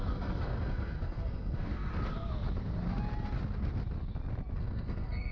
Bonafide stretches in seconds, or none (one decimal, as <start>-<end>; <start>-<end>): 1.9-4.6